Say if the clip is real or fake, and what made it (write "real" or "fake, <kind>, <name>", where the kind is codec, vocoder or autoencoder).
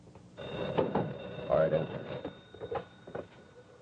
fake, vocoder, BigVGAN v2